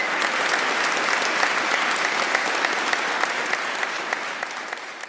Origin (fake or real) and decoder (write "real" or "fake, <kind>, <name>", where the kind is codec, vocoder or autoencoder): real